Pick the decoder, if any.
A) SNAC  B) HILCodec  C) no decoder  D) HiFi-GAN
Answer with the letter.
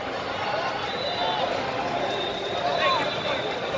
C